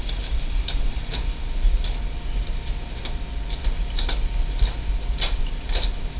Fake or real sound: real